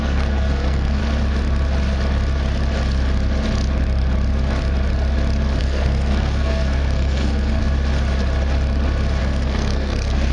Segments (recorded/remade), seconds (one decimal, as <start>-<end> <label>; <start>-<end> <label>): 0.0-1.0 remade; 1.0-5.6 recorded; 5.6-7.6 remade; 7.6-9.2 recorded; 9.2-10.3 remade